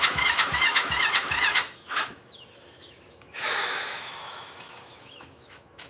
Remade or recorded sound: remade